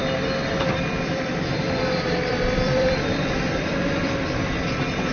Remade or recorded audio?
remade